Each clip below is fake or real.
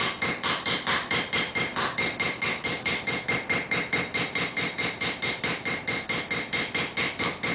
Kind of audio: real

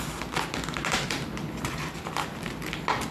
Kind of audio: real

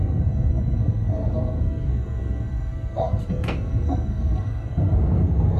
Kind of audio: fake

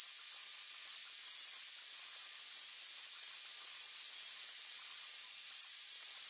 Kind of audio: real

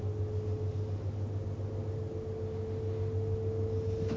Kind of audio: real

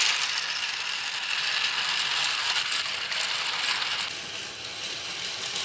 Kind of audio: real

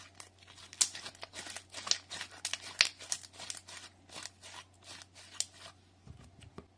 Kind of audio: real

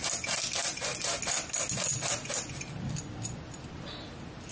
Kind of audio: real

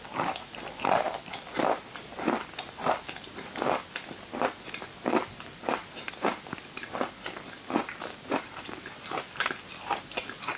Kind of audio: real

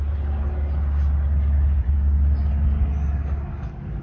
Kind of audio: real